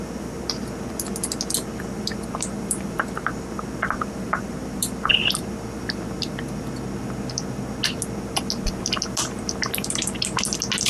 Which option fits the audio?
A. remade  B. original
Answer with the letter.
B